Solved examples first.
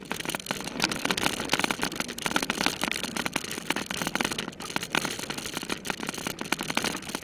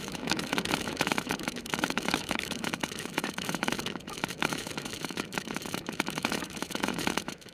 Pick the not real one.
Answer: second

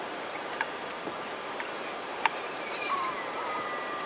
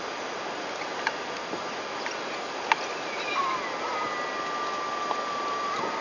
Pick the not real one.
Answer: first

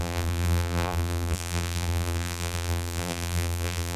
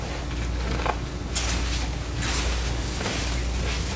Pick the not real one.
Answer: first